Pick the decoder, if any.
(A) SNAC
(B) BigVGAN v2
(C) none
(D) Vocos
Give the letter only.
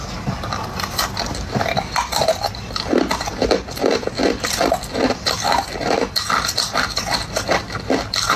C